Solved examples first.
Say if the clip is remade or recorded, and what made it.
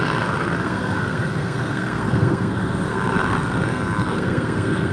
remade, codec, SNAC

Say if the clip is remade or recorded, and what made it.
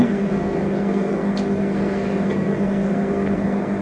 remade, codec, SNAC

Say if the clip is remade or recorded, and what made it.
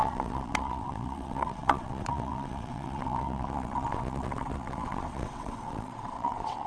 remade, vocoder, WaveNeXt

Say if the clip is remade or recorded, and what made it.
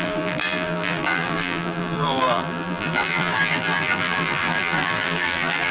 remade, vocoder, BigVGAN v2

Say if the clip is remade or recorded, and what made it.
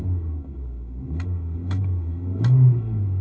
remade, codec, SNAC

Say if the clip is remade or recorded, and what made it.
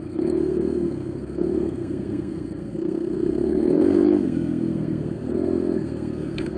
remade, codec, SNAC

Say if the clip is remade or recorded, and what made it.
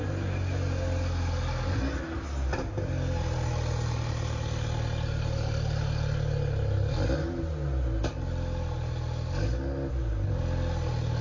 recorded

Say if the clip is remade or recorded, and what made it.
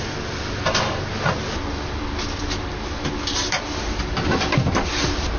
recorded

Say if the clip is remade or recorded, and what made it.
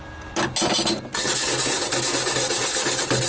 recorded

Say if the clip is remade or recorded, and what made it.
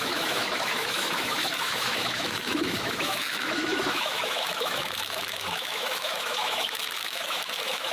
remade, autoencoder, DAC-VAE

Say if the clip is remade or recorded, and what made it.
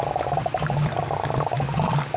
recorded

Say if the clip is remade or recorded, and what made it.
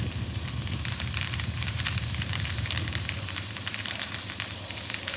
remade, vocoder, BigVGAN v2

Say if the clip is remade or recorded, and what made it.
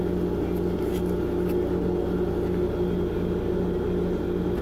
recorded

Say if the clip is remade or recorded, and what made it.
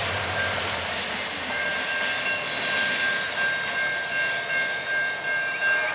recorded